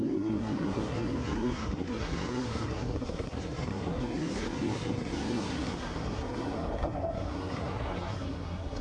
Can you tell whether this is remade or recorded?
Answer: remade